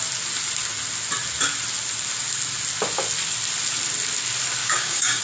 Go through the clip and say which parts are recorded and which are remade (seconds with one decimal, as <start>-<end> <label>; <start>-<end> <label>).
0.0-4.6 recorded; 4.6-5.2 remade